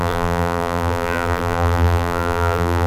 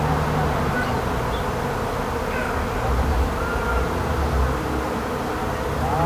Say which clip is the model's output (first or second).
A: first